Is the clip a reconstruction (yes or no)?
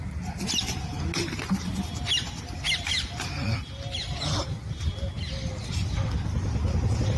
no